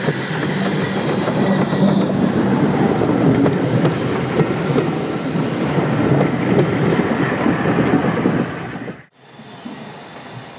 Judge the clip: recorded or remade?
recorded